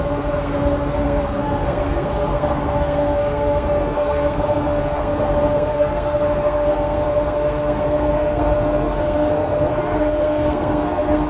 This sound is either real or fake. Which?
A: fake